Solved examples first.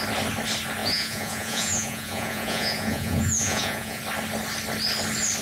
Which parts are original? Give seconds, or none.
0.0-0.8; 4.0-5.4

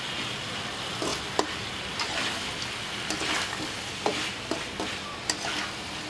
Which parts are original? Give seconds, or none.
0.0-6.1

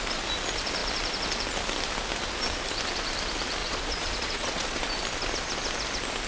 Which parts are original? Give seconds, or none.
0.0-3.6; 4.8-6.3

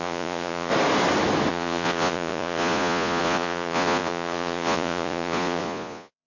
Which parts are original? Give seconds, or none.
0.7-1.5

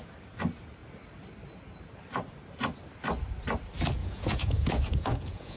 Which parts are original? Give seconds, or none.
0.0-4.0

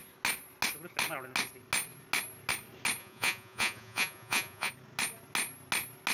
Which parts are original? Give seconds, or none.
0.0-3.0; 4.7-6.1

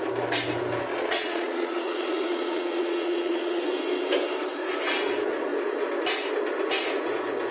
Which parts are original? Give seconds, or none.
0.0-0.9; 3.6-7.5

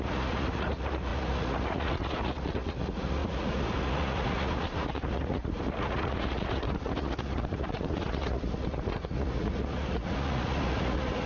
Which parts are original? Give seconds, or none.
none